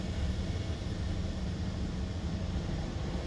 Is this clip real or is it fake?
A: real